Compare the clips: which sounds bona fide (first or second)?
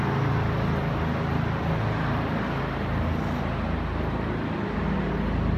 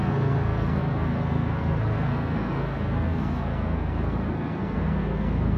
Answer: first